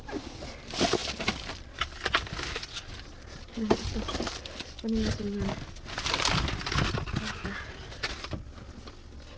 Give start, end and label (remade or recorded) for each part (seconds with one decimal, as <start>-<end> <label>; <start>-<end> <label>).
0.0-9.4 recorded